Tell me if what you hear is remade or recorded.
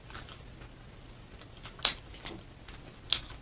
recorded